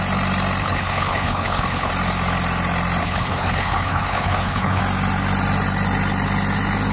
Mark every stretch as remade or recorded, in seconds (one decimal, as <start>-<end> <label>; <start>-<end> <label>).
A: 0.0-0.6 recorded; 0.6-1.9 remade; 1.9-3.0 recorded; 3.0-4.8 remade; 4.8-6.9 recorded